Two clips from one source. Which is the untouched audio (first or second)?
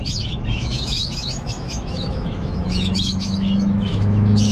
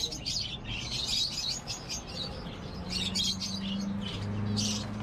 second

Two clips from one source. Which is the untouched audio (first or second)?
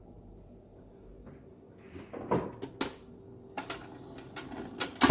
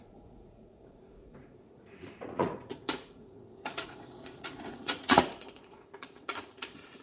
first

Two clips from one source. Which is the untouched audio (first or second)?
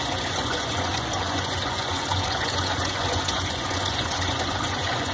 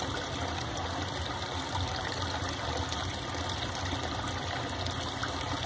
second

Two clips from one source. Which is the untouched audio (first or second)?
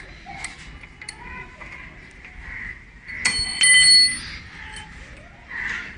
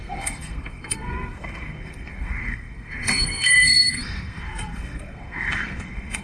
first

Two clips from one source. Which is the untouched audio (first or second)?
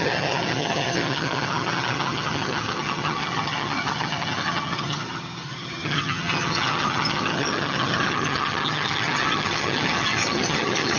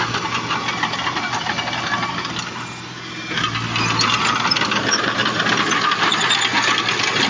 second